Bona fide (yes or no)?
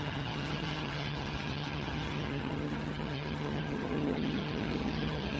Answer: no